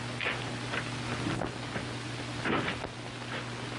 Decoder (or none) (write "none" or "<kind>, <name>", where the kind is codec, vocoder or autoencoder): none